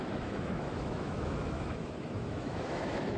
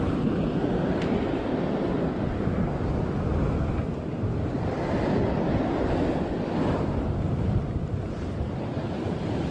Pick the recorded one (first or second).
second